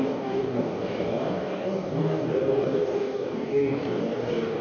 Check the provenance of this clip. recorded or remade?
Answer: remade